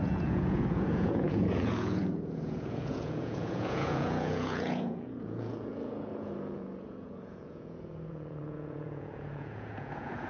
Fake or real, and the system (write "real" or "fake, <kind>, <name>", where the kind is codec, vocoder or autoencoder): fake, vocoder, Vocos